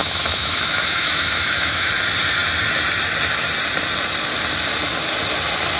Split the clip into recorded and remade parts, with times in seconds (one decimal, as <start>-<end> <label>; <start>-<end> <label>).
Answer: 0.0-1.9 remade; 1.9-5.8 recorded